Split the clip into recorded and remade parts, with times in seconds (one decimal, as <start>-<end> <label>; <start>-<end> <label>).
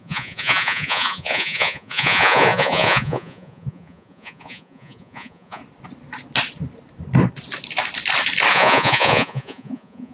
0.0-5.6 remade; 5.6-8.5 recorded; 8.5-10.1 remade